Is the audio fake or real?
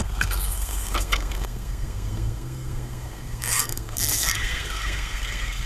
fake